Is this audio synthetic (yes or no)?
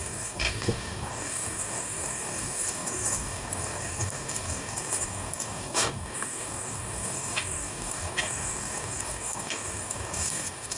yes